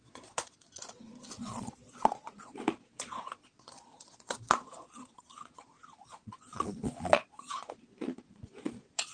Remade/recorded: remade